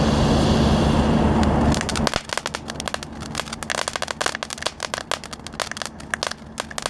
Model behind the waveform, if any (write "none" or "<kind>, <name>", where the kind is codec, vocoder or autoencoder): none